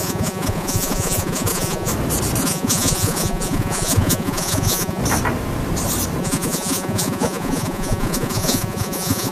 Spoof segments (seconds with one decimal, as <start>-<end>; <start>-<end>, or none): 0.0-1.9; 2.4-5.0; 6.2-9.3

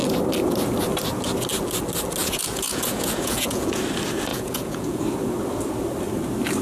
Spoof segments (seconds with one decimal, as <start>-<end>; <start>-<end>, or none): 2.2-3.8; 4.3-5.0

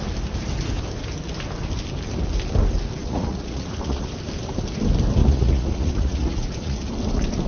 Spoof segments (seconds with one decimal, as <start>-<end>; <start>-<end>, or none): 3.0-4.1; 5.2-6.9

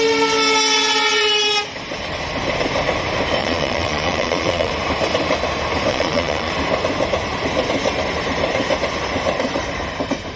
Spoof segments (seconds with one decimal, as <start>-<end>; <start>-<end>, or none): 3.4-4.7; 5.9-6.5

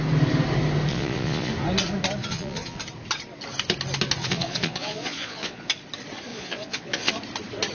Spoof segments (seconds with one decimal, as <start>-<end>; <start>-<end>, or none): 0.9-1.5; 2.2-2.8; 4.2-5.7; 6.3-7.1